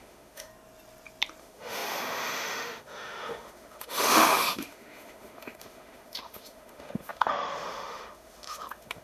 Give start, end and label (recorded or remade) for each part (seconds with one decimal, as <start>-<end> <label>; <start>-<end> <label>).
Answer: 0.0-0.5 remade; 0.5-1.4 recorded; 1.4-9.0 remade